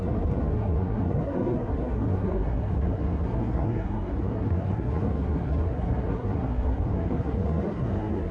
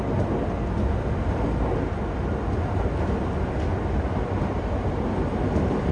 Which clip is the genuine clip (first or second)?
second